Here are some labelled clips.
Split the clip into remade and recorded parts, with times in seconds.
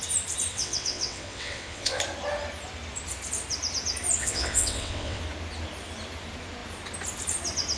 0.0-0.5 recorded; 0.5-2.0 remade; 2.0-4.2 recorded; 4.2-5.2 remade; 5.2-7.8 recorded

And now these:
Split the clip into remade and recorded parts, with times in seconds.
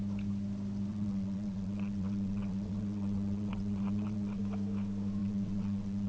0.0-0.9 recorded; 0.9-4.4 remade; 4.4-5.2 recorded; 5.2-6.1 remade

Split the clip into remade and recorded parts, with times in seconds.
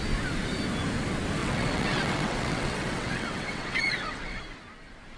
0.0-1.4 recorded; 1.4-4.4 remade; 4.4-5.2 recorded